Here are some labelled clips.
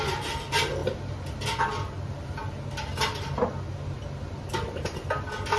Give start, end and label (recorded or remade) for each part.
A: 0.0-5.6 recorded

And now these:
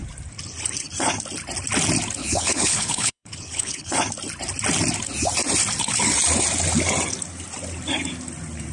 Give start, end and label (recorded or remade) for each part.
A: 0.0-2.2 recorded; 2.2-3.9 remade; 3.9-8.7 recorded

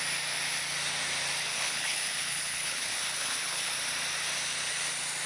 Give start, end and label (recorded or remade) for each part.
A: 0.0-1.5 recorded; 1.5-3.7 remade; 3.7-5.3 recorded

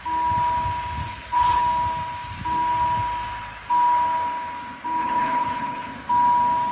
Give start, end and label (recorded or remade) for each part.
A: 0.0-1.0 recorded; 1.0-1.6 remade; 1.6-5.0 recorded; 5.0-5.9 remade; 5.9-6.7 recorded

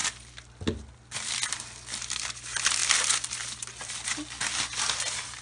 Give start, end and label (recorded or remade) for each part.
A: 0.0-5.4 recorded

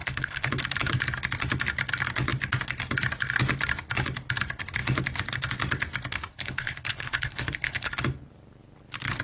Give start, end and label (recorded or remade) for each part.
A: 0.0-0.5 remade; 0.5-6.3 recorded; 6.3-7.9 remade; 7.9-9.2 recorded